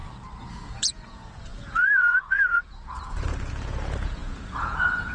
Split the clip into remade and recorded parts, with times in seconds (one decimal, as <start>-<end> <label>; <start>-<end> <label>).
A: 0.0-0.5 recorded; 0.5-5.1 remade